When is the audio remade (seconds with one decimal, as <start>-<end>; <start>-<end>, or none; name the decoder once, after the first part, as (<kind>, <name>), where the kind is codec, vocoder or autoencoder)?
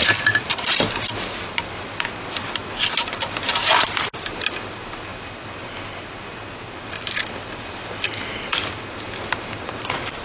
0.0-2.6 (vocoder, BigVGAN v2); 3.8-5.1; 9.2-10.2